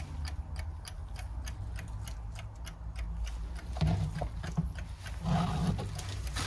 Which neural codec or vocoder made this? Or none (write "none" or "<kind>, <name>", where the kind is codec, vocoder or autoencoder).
none